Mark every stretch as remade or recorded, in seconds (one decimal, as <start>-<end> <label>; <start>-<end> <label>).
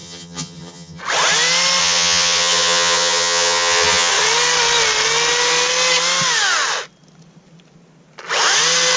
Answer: 0.0-1.0 remade; 1.0-1.8 recorded; 1.8-4.1 remade; 4.1-9.0 recorded